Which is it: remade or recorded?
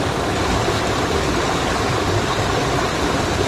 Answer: recorded